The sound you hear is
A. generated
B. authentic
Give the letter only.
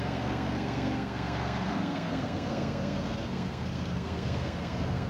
A